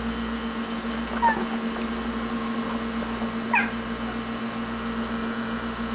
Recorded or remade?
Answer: recorded